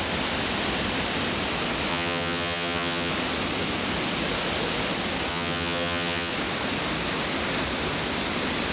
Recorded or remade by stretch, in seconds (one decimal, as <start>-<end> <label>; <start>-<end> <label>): 0.0-1.9 recorded; 1.9-3.1 remade; 3.1-5.3 recorded; 5.3-6.3 remade; 6.3-8.7 recorded